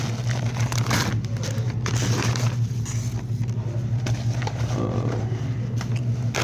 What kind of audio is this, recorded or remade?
recorded